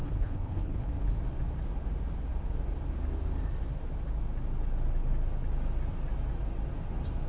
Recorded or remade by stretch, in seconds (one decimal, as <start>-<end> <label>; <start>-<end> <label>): 0.0-0.9 remade; 0.9-7.3 recorded